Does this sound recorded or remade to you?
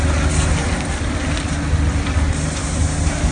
recorded